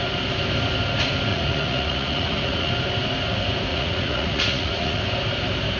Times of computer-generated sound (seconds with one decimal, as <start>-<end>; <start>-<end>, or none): 1.3-2.7; 3.7-5.0